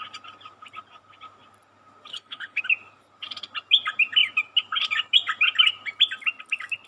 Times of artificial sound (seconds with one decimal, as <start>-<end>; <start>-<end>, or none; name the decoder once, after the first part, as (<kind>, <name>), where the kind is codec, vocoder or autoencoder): 2.1-2.6 (codec, HILCodec)